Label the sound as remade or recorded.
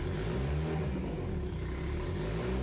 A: recorded